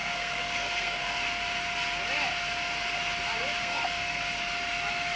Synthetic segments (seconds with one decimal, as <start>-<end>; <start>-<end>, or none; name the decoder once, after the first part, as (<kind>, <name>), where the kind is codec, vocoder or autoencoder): 0.0-1.2 (codec, SNAC); 3.6-4.4